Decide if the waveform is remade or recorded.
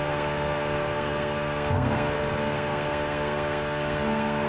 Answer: remade